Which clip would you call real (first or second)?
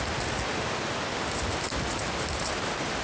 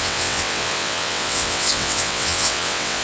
first